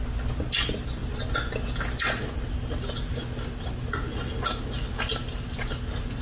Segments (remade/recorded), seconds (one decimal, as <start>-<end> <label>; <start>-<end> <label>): 0.0-6.2 recorded